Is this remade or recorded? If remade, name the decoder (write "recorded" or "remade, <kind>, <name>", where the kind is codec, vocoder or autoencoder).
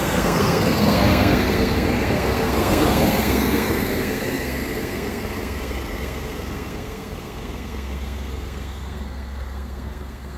remade, codec, SNAC